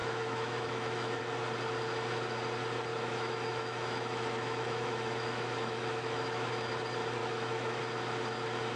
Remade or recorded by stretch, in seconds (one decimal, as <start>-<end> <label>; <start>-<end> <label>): 0.0-1.2 remade; 1.2-2.9 recorded; 2.9-6.7 remade; 6.7-7.2 recorded; 7.2-7.8 remade; 7.8-8.8 recorded